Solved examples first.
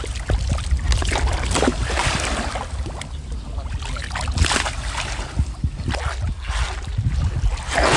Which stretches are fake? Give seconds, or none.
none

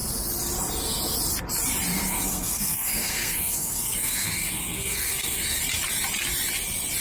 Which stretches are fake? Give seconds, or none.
1.9-5.6 (codec, SNAC)

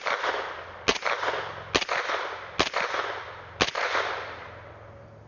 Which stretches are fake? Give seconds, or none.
none

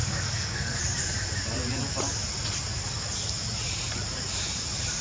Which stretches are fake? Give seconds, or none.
0.0-0.8 (codec, SNAC)

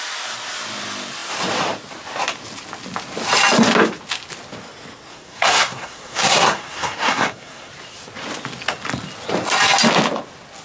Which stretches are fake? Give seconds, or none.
5.1-7.7 (codec, SNAC)

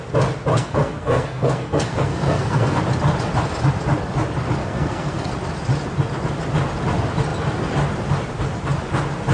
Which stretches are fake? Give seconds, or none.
0.5-2.8 (codec, SNAC); 4.6-5.3

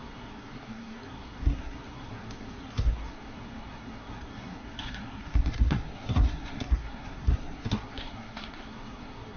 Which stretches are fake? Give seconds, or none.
0.0-9.4 (codec, SNAC)